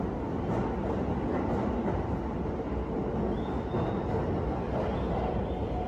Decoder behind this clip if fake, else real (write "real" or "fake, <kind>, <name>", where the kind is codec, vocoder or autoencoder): real